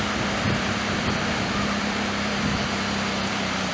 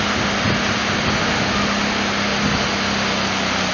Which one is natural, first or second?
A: second